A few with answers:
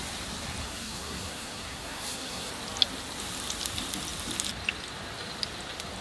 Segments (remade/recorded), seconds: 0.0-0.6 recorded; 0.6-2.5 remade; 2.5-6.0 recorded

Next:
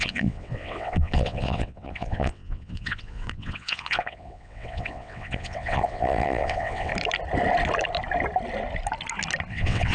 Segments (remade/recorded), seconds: 0.0-6.9 remade; 6.9-9.5 recorded; 9.5-9.9 remade